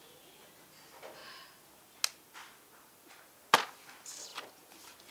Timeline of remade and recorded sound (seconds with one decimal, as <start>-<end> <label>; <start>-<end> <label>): 0.0-5.1 recorded